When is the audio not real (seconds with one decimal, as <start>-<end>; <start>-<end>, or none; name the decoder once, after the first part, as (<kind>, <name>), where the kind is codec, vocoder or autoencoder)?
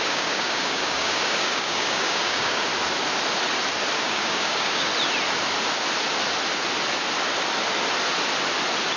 0.0-2.7 (codec, DAC); 4.0-4.9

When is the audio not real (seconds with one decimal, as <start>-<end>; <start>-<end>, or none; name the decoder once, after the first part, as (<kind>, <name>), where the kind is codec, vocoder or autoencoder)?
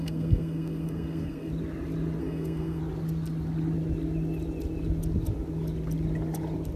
0.0-1.5 (codec, SNAC); 2.2-2.8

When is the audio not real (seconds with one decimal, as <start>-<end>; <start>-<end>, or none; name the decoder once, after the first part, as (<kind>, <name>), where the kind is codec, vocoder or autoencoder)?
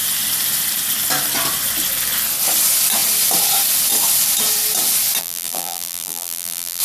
5.2-6.8 (vocoder, BigVGAN v2)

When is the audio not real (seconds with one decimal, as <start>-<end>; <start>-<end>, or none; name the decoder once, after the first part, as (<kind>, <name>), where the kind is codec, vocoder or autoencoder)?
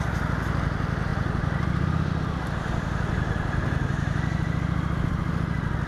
1.1-2.1 (vocoder, BigVGAN v2)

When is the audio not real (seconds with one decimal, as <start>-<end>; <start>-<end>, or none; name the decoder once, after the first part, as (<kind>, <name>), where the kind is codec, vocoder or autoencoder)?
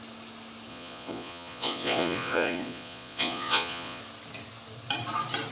0.7-4.0 (vocoder, Vocos)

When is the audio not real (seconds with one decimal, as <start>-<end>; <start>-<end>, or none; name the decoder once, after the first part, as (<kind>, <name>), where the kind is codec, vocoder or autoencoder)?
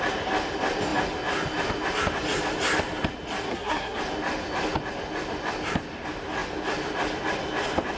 3.5-4.0 (codec, SNAC)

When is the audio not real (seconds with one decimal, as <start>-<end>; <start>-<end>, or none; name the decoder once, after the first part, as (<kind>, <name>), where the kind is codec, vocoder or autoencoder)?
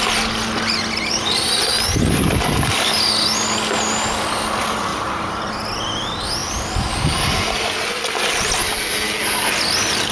4.9-5.5 (vocoder, BigVGAN v2); 6.4-7.2